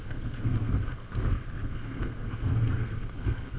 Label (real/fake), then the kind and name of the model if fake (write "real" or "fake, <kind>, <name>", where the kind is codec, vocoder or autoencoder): fake, codec, SNAC